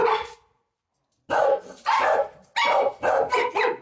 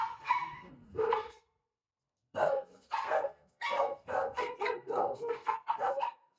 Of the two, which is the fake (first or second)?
second